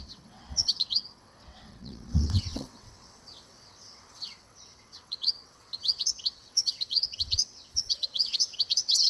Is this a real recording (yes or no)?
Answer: no